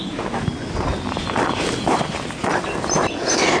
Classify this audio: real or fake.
real